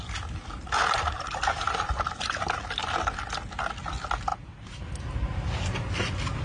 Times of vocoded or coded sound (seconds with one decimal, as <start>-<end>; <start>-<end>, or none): 0.8-2.8; 4.3-4.8